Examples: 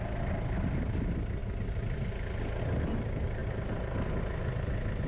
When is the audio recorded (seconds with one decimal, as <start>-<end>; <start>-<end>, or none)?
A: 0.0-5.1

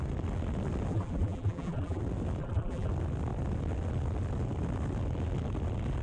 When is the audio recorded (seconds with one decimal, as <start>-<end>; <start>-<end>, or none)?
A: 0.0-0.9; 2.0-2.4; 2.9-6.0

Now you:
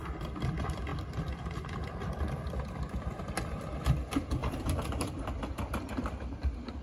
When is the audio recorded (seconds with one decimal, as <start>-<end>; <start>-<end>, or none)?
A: 0.0-4.4; 5.2-6.8